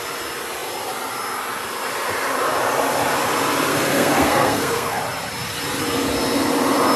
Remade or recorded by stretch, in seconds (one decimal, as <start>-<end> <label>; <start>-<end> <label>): 0.0-3.7 recorded; 3.7-5.0 remade; 5.0-7.0 recorded